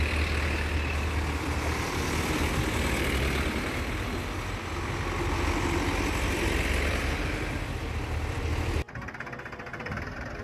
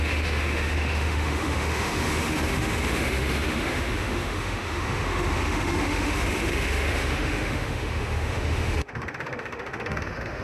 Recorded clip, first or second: first